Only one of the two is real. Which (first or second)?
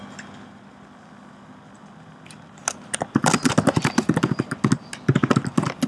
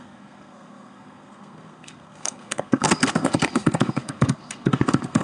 first